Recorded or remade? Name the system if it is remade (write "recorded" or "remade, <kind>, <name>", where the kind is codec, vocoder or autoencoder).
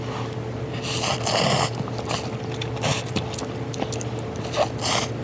recorded